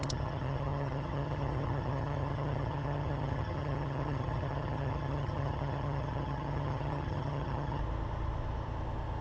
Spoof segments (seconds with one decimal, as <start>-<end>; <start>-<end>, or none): 0.0-7.8